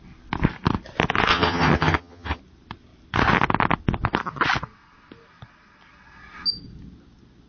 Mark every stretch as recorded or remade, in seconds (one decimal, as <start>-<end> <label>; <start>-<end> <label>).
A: 0.0-1.3 recorded; 1.3-2.4 remade; 2.4-7.5 recorded

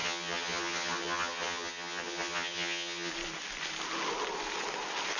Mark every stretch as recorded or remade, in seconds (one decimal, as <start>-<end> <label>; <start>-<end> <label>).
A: 0.0-3.1 remade; 3.1-5.2 recorded

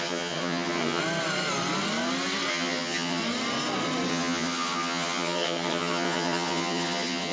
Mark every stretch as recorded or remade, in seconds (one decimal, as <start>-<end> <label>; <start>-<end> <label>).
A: 0.0-1.0 remade; 1.0-2.5 recorded; 2.5-3.2 remade; 3.2-4.1 recorded; 4.1-7.3 remade

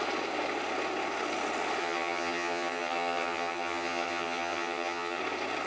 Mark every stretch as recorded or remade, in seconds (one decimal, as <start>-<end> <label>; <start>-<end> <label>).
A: 0.0-1.8 recorded; 1.8-5.2 remade; 5.2-5.7 recorded

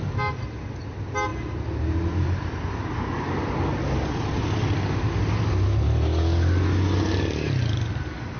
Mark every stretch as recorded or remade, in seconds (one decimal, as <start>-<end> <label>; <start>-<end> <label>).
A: 0.0-8.4 recorded

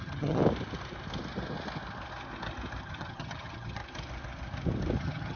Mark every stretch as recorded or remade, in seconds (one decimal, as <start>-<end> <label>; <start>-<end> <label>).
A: 0.0-0.4 remade; 0.4-2.8 recorded; 2.8-3.8 remade; 3.8-5.0 recorded; 5.0-5.4 remade

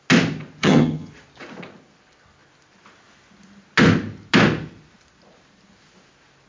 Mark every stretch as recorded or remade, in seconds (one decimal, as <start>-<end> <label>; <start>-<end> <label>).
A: 0.0-0.6 recorded; 0.6-1.1 remade; 1.1-6.5 recorded

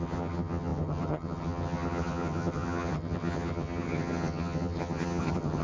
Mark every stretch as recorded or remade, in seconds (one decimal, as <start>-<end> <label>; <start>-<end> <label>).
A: 0.0-5.6 remade